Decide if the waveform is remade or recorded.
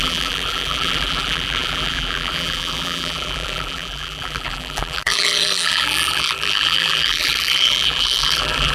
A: remade